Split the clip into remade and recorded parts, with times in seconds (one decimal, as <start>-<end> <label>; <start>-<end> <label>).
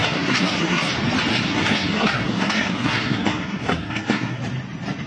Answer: 0.0-0.9 remade; 0.9-1.3 recorded; 1.3-4.4 remade; 4.4-5.1 recorded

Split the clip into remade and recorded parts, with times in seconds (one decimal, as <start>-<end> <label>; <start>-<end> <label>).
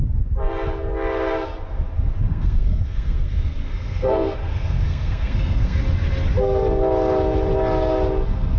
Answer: 0.0-2.3 recorded; 2.3-5.8 remade; 5.8-8.6 recorded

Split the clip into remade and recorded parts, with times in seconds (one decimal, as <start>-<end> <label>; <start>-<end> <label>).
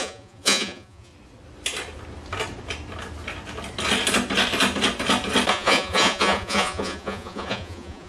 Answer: 0.0-1.1 remade; 1.1-5.5 recorded; 5.5-8.1 remade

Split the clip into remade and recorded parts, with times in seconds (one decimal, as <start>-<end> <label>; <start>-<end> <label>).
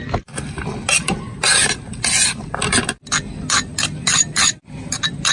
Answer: 0.0-5.3 recorded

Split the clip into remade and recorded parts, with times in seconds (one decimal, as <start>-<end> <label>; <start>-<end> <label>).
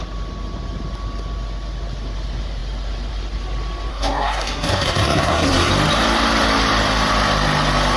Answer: 0.0-3.9 recorded; 3.9-5.7 remade; 5.7-8.0 recorded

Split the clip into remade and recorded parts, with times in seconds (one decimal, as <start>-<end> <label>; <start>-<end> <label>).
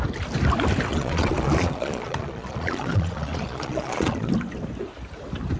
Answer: 0.0-0.9 recorded; 0.9-4.3 remade; 4.3-5.6 recorded